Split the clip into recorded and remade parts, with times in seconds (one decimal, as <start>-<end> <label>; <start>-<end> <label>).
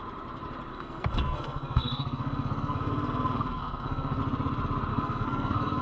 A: 0.0-0.7 recorded; 0.7-4.2 remade; 4.2-4.9 recorded; 4.9-5.8 remade